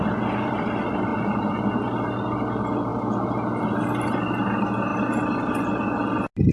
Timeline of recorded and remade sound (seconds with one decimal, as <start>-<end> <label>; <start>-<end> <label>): 0.0-1.1 recorded; 1.1-1.6 remade; 1.6-6.5 recorded